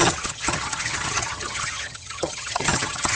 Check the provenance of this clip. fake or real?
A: fake